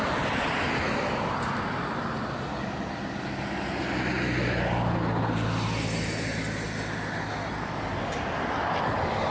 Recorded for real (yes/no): yes